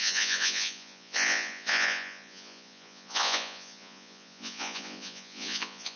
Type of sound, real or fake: fake